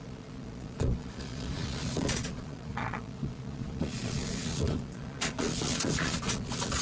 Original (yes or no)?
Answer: no